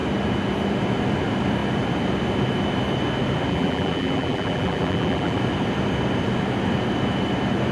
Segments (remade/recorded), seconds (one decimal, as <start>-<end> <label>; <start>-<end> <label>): 0.0-3.5 recorded; 3.5-5.4 remade; 5.4-7.7 recorded